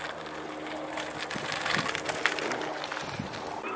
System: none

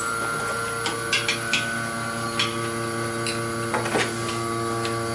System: none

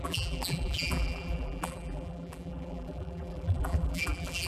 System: vocoder, BigVGAN v2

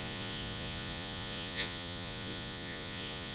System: vocoder, Vocos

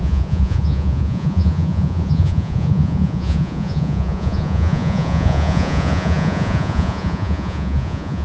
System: vocoder, Vocos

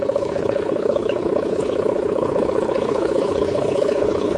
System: codec, HILCodec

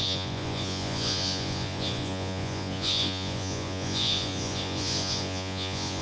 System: vocoder, Vocos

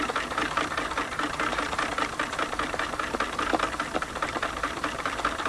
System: none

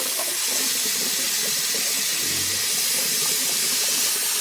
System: none